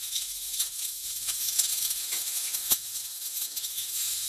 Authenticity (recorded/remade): remade